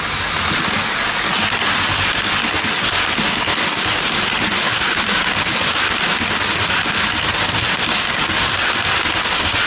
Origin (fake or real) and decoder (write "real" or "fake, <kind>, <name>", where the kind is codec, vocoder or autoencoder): real